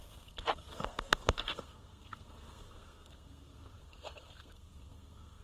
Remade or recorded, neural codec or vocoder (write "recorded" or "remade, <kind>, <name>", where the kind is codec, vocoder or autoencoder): remade, codec, SNAC